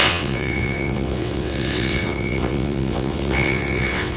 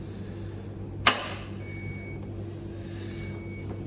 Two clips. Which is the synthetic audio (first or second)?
first